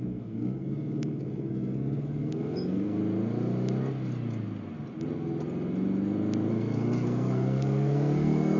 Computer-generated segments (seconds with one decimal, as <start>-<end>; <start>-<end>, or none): 0.0-3.0; 6.5-8.6